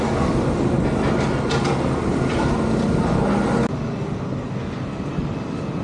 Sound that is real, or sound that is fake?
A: real